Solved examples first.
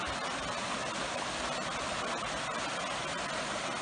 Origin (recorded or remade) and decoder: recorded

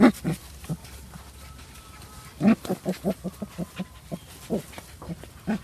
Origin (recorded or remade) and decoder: recorded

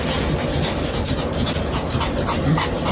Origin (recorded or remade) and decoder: recorded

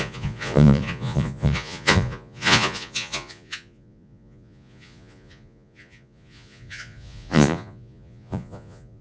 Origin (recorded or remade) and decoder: remade, vocoder, Vocos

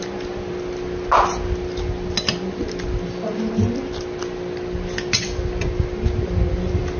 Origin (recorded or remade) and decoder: recorded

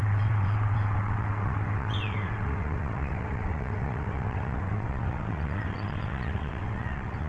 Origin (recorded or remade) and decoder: remade, vocoder, WaveNeXt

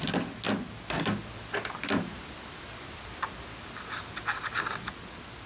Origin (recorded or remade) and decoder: recorded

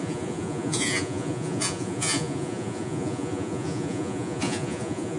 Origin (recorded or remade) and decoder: remade, vocoder, Vocos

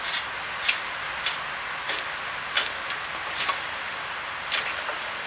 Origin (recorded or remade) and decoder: recorded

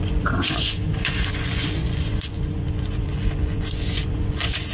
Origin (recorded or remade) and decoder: remade, vocoder, Vocos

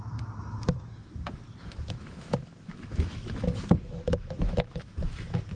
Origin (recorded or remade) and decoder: remade, autoencoder, DAC-VAE